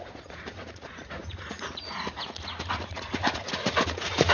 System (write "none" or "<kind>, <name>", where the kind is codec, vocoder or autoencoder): vocoder, Vocos